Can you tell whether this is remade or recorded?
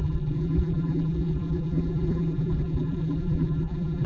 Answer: remade